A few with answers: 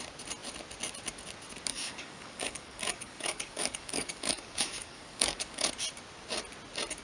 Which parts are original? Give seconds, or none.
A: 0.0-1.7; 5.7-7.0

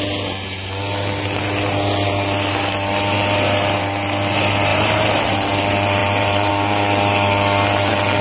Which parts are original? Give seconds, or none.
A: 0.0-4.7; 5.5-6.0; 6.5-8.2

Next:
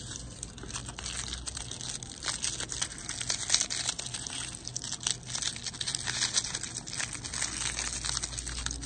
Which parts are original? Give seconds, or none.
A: 0.0-8.9

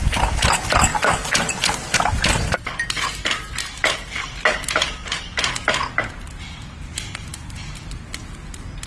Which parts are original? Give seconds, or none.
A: 0.0-8.9

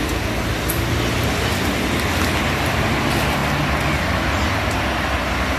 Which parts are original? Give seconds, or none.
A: 0.0-5.6